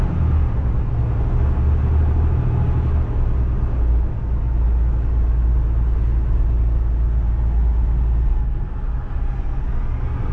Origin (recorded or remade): recorded